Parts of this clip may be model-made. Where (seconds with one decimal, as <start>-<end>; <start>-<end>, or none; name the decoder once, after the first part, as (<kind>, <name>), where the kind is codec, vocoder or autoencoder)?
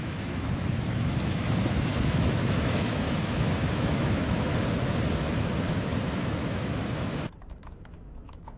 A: 0.0-4.5 (autoencoder, DAC-VAE); 5.2-8.6